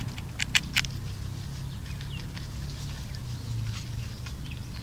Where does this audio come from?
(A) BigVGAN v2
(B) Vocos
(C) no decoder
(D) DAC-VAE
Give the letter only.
C